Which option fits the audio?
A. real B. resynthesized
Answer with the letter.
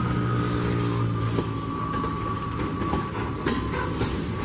A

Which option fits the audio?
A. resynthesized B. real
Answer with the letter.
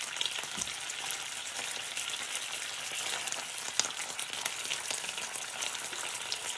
B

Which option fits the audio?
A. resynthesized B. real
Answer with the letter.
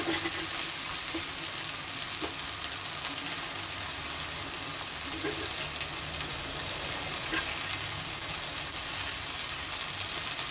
B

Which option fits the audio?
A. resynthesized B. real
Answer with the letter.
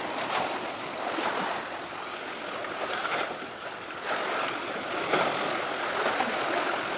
B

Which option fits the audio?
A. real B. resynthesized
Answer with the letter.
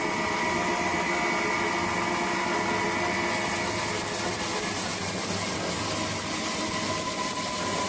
A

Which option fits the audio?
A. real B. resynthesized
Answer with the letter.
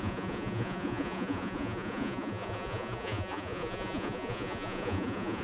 B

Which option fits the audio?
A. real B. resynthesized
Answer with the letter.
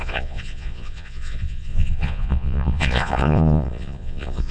B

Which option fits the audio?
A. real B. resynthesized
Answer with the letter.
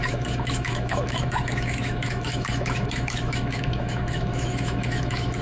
B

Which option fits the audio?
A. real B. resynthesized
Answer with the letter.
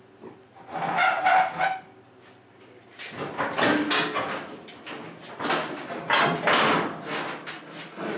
A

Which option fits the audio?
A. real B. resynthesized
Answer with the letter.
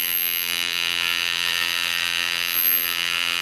B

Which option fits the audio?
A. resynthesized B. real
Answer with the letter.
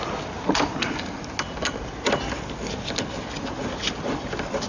B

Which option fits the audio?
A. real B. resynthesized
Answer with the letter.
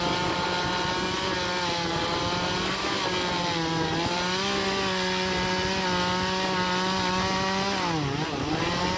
A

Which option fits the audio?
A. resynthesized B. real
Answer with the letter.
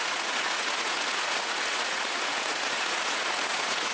A